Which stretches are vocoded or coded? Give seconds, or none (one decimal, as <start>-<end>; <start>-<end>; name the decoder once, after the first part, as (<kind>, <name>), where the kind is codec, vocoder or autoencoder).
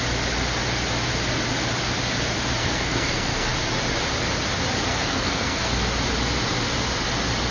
2.6-3.5 (codec, SNAC); 4.9-5.7